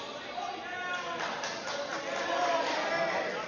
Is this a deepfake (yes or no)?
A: no